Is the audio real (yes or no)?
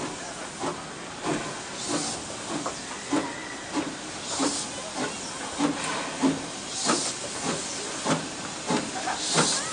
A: yes